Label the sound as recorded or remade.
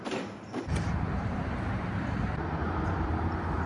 remade